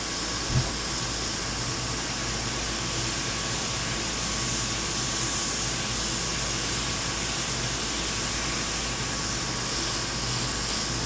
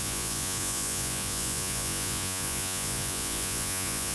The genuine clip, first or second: first